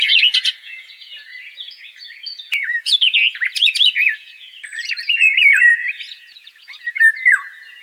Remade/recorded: remade